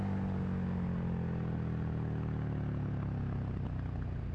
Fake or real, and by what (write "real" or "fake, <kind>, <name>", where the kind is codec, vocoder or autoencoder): real